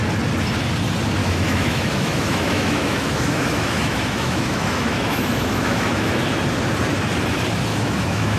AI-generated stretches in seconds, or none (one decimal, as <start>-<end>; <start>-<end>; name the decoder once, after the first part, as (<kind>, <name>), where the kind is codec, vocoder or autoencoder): 1.2-6.2 (autoencoder, DAC-VAE); 7.7-8.4